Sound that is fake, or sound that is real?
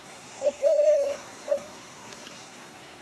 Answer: fake